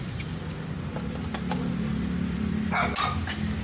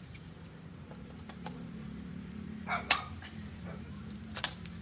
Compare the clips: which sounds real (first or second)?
first